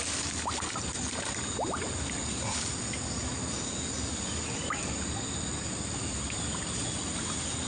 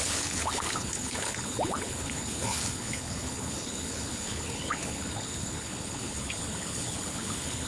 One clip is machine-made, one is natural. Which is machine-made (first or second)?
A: second